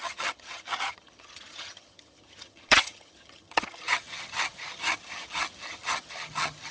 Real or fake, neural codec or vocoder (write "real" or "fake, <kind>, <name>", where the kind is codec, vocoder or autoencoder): fake, vocoder, HiFi-GAN